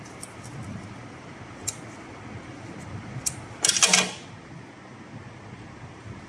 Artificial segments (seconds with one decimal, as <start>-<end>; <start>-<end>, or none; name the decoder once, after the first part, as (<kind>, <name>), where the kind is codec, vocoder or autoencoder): none